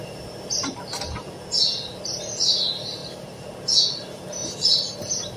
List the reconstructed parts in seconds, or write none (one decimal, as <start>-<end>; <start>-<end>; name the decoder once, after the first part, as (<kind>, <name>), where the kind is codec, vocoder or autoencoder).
0.0-1.0 (vocoder, BigVGAN v2); 3.0-3.5; 4.4-5.4